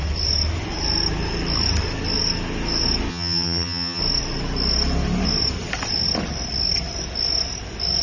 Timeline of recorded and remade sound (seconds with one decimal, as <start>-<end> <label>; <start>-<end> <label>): 0.0-3.1 recorded; 3.1-4.0 remade; 4.0-8.0 recorded